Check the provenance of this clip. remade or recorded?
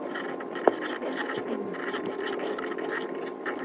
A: recorded